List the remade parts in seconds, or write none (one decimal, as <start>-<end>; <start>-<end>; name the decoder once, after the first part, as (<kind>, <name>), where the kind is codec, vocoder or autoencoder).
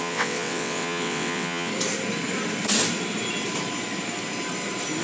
0.0-1.7 (vocoder, WaveNeXt)